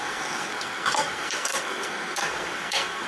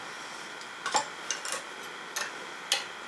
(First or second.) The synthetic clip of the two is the first